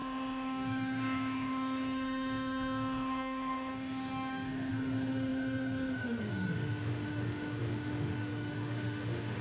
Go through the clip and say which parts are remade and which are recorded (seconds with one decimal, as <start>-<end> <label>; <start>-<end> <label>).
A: 0.0-9.4 remade